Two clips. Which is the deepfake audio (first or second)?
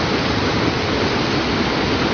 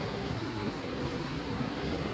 second